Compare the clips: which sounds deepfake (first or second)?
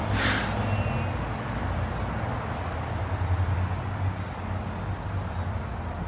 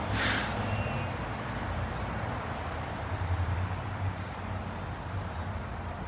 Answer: second